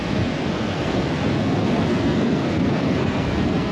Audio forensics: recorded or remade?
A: remade